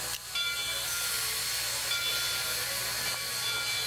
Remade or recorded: recorded